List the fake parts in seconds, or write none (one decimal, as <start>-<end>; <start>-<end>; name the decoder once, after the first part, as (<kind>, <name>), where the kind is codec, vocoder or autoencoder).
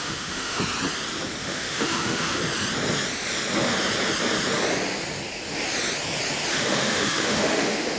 0.0-0.6 (autoencoder, DAC-VAE); 1.4-2.4; 6.5-8.0